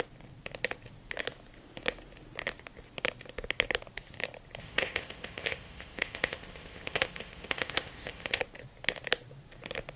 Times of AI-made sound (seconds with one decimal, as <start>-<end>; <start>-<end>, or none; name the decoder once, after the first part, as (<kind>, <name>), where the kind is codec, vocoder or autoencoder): 4.6-8.4 (codec, ZipCodec)